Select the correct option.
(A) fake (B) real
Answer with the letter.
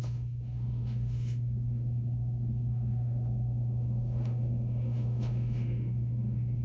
A